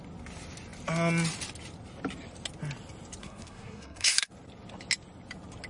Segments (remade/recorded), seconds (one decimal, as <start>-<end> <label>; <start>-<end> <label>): 0.0-3.2 recorded; 3.2-4.3 remade; 4.3-5.7 recorded